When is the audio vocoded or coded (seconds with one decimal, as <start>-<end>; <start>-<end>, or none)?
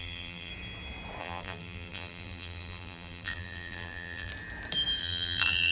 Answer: 0.0-0.5; 1.2-4.3; 5.0-5.7